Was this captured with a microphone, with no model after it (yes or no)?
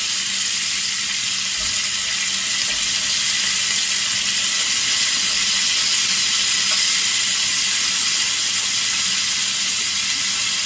yes